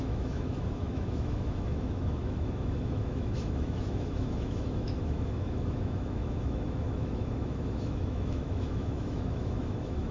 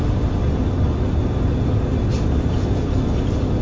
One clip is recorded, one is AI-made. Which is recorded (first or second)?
second